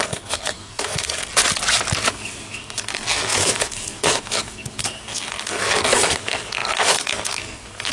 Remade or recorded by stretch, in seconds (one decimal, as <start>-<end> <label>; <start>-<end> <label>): 0.0-1.3 remade; 1.3-2.1 recorded; 2.1-7.9 remade